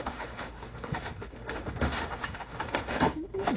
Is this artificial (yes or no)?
yes